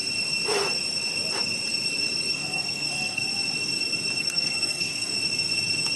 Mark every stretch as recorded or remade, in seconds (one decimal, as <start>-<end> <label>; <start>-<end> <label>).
0.0-2.3 recorded; 2.3-3.2 remade; 3.2-4.2 recorded; 4.2-5.1 remade; 5.1-6.0 recorded